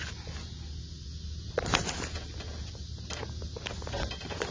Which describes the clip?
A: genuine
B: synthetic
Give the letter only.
A